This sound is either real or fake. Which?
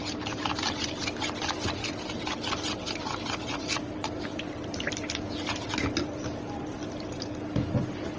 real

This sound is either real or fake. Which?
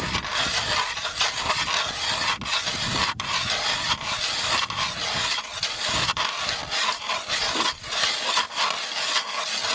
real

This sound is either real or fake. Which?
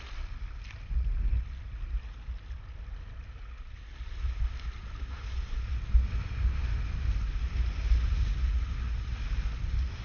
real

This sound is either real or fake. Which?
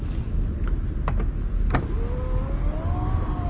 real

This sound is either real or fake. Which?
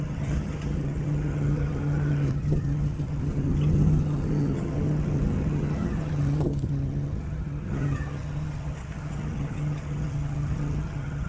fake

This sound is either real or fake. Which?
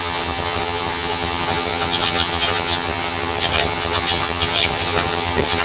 fake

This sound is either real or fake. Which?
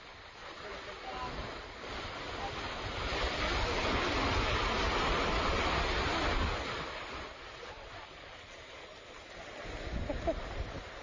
real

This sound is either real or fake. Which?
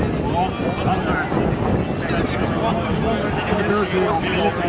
real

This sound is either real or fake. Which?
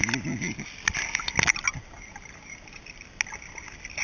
real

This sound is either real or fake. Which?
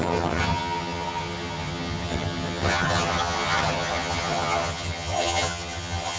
fake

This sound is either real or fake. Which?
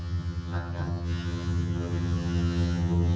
fake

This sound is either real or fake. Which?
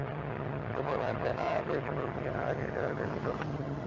fake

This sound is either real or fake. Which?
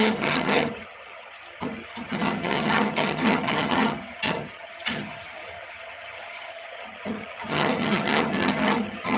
fake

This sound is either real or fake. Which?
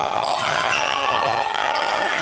fake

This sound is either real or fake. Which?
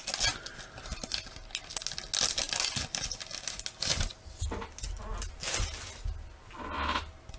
real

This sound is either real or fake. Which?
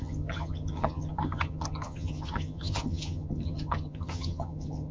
fake